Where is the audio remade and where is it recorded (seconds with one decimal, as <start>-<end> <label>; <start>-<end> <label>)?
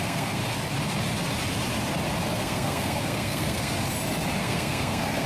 0.0-0.4 remade; 0.4-2.4 recorded; 2.4-3.7 remade; 3.7-4.4 recorded; 4.4-5.3 remade